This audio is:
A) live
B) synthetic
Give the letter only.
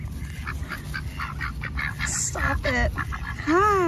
A